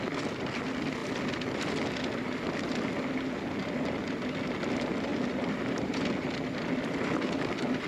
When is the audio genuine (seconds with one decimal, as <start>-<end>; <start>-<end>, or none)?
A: 0.0-5.1; 7.4-7.9